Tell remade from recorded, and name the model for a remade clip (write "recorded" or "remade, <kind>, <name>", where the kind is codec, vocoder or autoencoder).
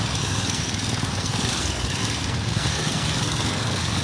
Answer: remade, codec, SNAC